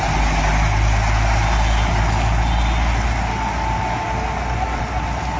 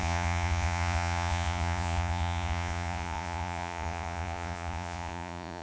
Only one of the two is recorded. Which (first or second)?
first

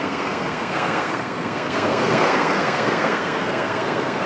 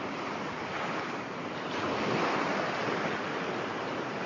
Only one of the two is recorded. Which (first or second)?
second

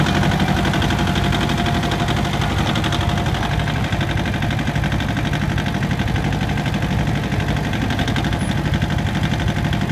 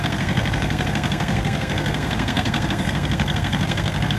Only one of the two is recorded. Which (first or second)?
first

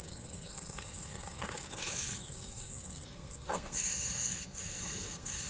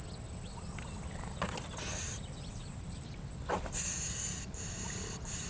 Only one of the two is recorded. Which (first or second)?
second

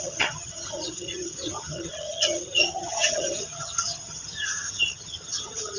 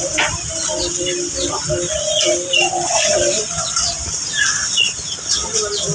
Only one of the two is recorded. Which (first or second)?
second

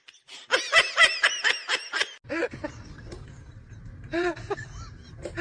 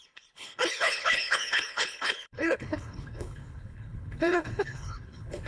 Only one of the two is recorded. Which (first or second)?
first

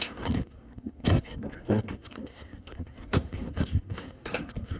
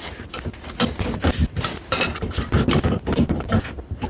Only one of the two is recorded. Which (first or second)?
second